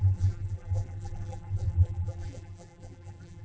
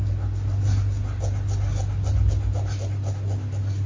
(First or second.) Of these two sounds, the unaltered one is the second